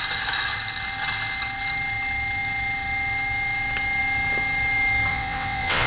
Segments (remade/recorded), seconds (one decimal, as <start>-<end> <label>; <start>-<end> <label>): 0.0-5.1 recorded; 5.1-5.9 remade